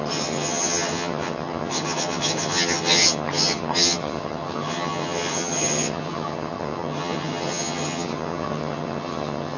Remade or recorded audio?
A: remade